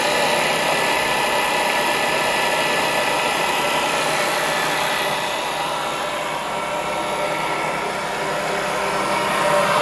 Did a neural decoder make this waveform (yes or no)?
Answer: no